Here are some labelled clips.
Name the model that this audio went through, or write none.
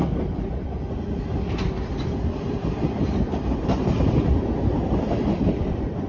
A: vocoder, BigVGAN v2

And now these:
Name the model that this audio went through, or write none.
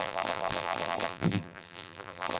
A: vocoder, BigVGAN v2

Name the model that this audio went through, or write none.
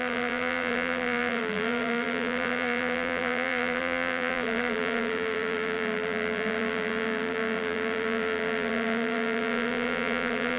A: vocoder, BigVGAN v2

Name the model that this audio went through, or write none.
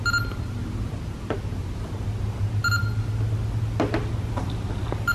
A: none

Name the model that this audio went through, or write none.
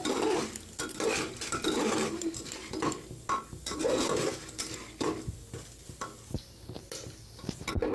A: vocoder, BigVGAN v2